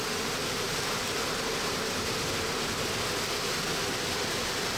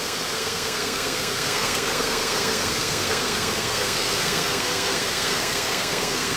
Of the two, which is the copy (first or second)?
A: second